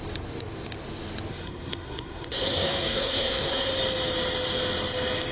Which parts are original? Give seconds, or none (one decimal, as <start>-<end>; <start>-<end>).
0.0-1.3; 3.7-5.3